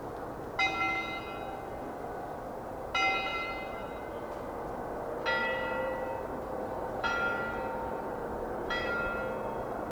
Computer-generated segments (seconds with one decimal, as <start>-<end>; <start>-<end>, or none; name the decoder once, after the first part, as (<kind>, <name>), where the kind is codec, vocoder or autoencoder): 3.3-4.1 (vocoder, BigVGAN v2); 5.4-9.2